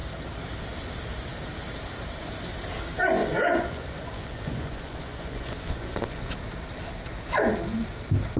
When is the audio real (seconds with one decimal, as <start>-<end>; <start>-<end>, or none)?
0.0-3.2; 6.3-8.4